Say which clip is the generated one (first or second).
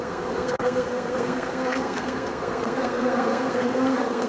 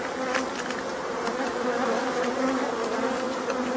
first